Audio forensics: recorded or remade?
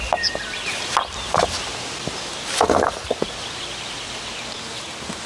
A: recorded